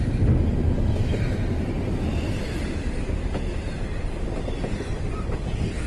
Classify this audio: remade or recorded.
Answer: recorded